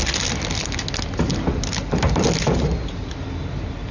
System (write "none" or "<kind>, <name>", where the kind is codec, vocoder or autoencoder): none